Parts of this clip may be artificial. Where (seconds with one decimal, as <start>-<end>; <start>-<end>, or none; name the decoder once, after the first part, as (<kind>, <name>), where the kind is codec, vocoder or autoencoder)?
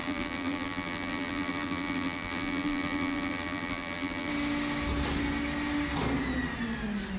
0.0-4.3 (vocoder, BigVGAN v2)